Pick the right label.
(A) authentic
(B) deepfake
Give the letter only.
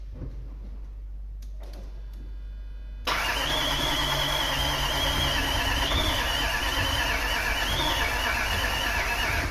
A